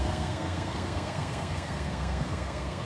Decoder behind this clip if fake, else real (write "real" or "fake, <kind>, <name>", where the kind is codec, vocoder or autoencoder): fake, codec, SNAC